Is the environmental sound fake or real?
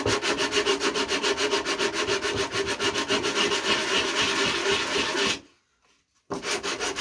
real